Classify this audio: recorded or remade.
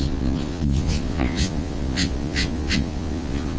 remade